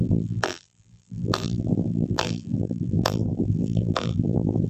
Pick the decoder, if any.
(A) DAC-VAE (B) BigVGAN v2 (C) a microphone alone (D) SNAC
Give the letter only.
B